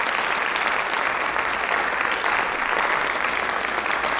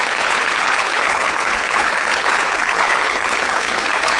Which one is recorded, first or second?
first